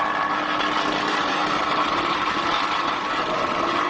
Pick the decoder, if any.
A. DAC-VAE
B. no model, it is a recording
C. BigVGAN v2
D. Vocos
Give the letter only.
B